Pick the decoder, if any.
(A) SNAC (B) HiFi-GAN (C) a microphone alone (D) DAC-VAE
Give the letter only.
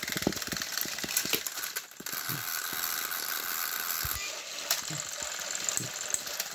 C